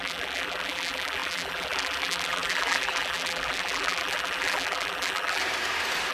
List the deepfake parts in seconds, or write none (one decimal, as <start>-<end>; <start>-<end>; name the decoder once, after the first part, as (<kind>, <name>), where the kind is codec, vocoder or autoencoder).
0.0-5.4 (vocoder, BigVGAN v2)